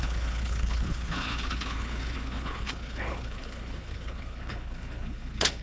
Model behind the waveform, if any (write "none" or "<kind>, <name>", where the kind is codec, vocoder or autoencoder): codec, HILCodec